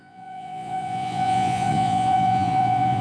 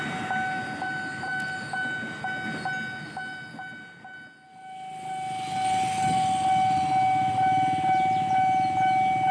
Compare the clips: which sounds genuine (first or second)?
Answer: second